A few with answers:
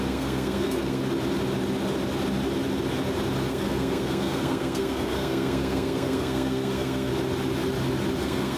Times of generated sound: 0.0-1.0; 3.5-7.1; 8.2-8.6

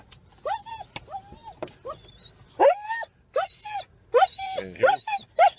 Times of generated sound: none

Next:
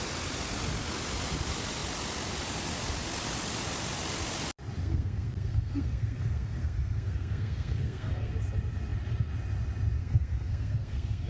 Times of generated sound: 4.8-8.3; 10.0-11.3

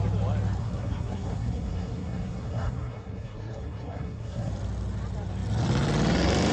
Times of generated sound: 0.6-4.5

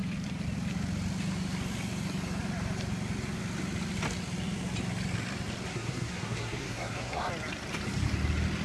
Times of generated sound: 5.7-7.3

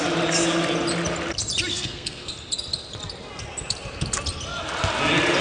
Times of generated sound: 1.7-2.3

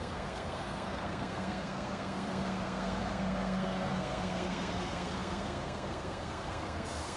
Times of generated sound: 0.0-7.2

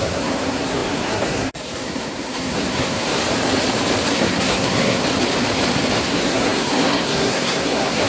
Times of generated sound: 0.0-3.2; 4.1-5.0; 6.0-8.1